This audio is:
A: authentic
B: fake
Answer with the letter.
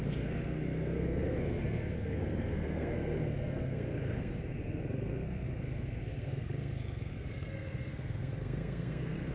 B